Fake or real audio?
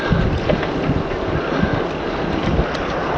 real